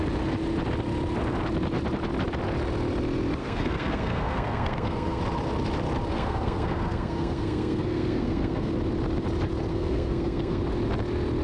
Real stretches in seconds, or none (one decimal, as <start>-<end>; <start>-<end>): 0.0-3.4; 5.2-6.1; 8.7-9.7; 10.6-11.4